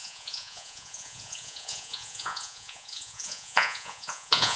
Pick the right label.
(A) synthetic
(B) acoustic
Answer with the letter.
A